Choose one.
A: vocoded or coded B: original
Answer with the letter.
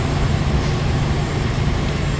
B